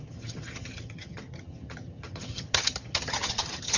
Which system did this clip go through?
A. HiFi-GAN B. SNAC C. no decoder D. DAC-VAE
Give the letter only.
A